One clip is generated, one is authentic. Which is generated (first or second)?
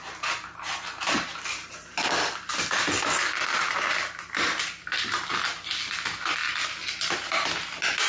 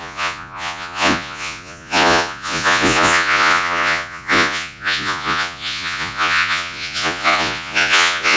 second